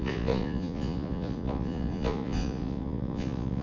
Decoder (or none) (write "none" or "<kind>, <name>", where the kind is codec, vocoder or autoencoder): vocoder, Vocos